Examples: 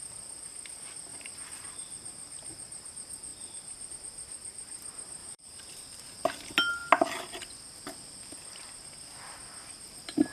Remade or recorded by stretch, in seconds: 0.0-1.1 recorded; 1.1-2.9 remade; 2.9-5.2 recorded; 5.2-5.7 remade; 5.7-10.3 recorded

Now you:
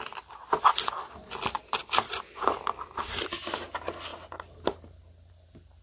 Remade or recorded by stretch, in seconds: 0.0-5.8 recorded

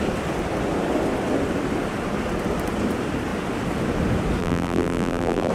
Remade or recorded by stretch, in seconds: 0.0-4.4 recorded; 4.4-5.5 remade

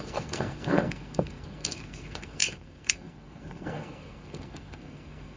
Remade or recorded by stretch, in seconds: 0.0-5.4 remade

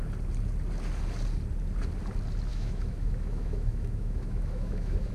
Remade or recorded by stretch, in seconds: 0.0-2.5 recorded; 2.5-5.1 remade

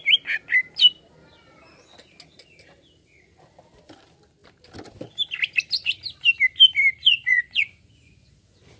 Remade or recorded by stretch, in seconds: 0.0-7.0 recorded; 7.0-8.3 remade; 8.3-8.8 recorded

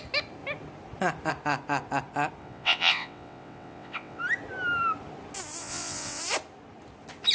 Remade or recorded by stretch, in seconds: 0.0-2.4 recorded; 2.4-4.2 remade; 4.2-5.6 recorded; 5.6-6.2 remade; 6.2-7.3 recorded

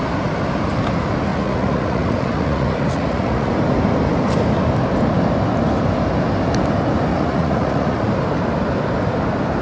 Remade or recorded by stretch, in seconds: 0.0-1.3 recorded; 1.3-3.5 remade; 3.5-7.1 recorded; 7.1-8.1 remade; 8.1-9.6 recorded